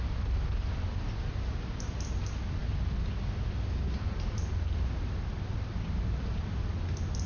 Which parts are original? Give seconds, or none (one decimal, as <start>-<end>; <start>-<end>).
0.0-7.3